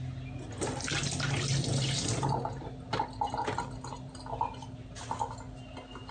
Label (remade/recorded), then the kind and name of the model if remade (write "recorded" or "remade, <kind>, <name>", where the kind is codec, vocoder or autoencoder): recorded